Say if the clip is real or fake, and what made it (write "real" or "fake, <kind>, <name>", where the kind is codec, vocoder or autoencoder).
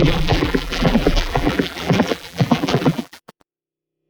fake, vocoder, BigVGAN v2